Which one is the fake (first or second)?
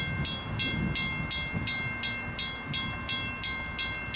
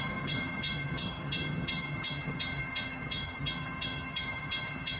second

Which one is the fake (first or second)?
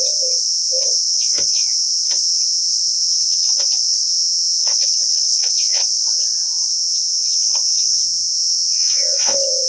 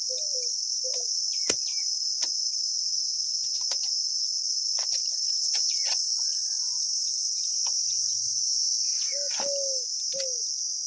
first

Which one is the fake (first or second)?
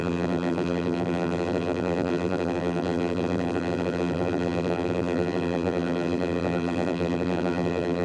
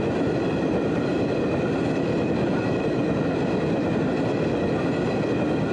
first